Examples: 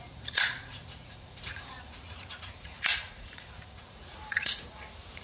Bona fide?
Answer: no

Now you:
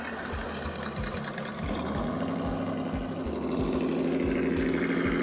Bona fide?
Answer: yes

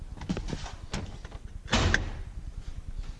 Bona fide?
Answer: yes